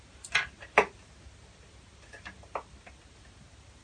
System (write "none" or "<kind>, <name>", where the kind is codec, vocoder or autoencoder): none